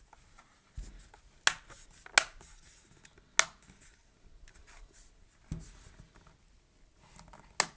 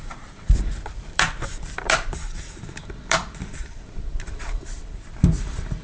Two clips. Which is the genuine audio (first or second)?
first